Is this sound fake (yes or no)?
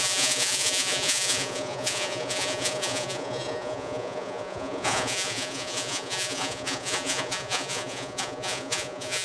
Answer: yes